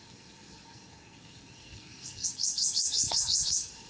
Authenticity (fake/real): fake